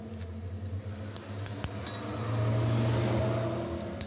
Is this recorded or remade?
recorded